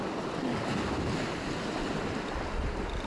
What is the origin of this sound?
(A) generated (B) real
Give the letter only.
B